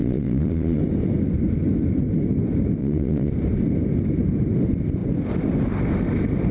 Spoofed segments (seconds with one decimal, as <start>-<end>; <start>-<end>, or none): 0.0-0.8; 2.8-3.3